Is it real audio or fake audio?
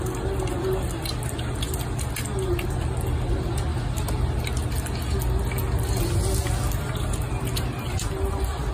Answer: real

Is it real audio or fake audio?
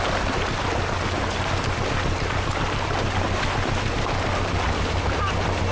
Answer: real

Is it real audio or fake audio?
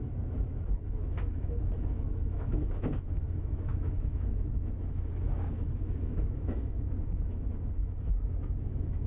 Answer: fake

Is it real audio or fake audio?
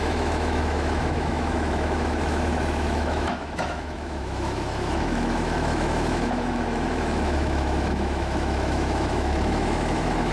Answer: fake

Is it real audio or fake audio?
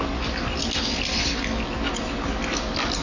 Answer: real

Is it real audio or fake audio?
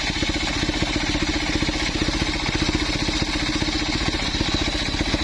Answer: real